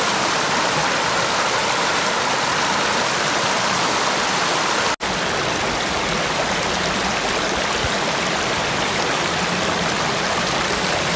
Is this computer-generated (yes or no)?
no